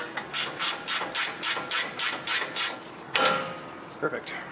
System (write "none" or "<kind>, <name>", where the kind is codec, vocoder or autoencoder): none